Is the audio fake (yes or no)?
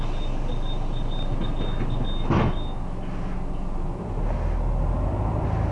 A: no